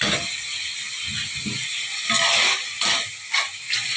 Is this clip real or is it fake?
real